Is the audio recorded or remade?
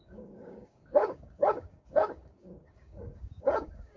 remade